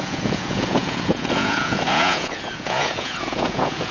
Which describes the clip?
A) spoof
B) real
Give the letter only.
A